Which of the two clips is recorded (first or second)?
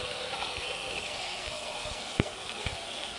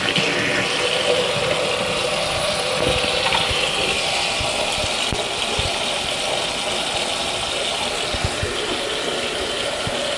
second